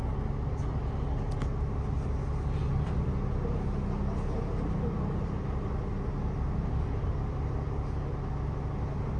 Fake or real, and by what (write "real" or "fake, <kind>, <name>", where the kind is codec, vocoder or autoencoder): real